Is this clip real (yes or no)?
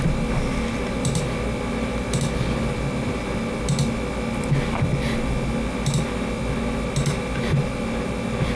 yes